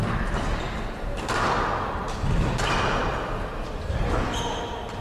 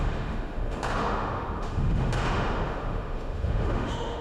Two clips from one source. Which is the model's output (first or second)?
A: second